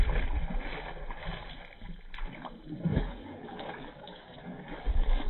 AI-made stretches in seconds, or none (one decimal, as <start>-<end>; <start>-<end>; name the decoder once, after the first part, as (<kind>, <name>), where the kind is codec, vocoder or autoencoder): 2.9-5.3 (codec, DAC)